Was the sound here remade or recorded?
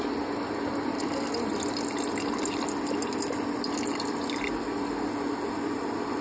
recorded